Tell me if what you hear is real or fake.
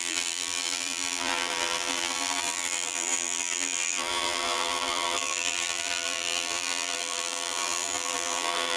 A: fake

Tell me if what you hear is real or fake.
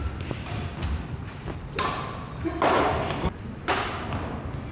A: real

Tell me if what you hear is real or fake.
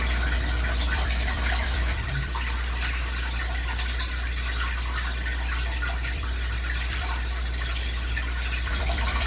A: fake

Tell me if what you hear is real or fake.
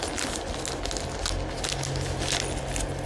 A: real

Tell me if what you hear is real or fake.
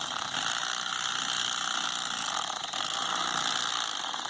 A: real